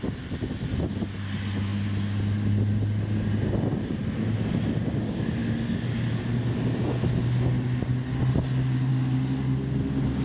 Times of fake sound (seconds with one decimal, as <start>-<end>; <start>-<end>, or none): none